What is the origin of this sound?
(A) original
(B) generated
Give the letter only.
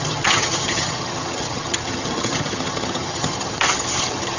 B